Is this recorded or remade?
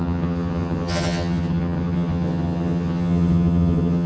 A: remade